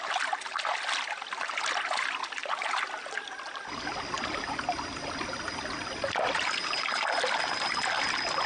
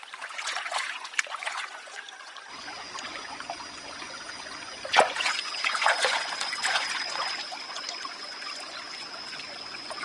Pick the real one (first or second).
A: first